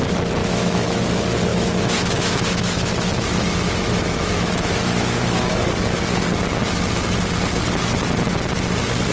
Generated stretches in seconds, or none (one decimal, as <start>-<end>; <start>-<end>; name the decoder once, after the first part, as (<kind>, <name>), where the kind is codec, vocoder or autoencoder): 0.4-1.0 (autoencoder, DAC-VAE); 1.5-5.5